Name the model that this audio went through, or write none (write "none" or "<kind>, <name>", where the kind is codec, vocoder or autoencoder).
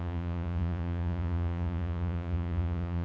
vocoder, Vocos